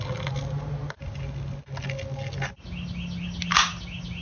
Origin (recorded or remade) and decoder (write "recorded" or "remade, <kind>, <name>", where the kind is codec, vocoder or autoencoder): recorded